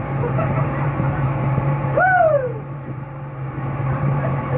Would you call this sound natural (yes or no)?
no